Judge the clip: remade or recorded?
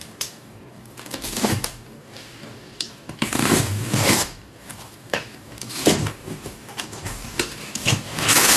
remade